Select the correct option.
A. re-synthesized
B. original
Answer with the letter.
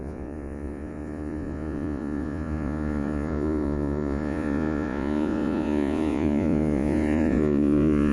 A